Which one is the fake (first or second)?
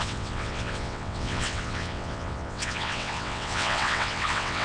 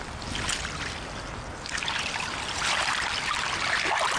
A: first